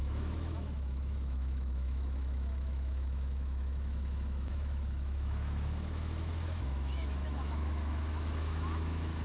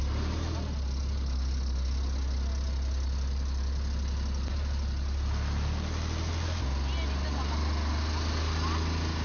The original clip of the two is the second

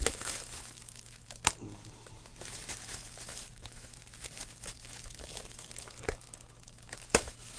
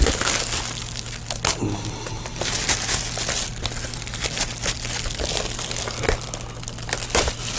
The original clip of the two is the second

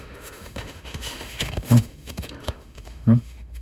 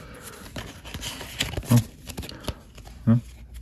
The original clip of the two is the second